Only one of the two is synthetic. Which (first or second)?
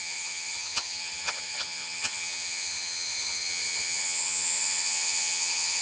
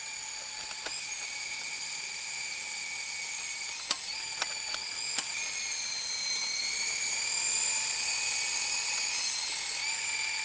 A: first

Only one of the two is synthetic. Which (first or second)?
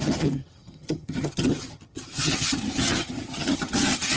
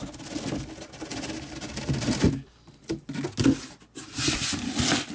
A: first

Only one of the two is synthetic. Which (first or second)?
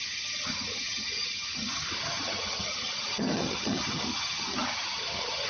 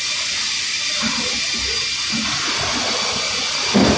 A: first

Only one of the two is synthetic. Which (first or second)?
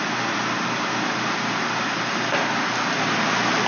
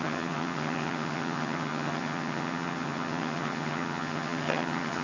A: second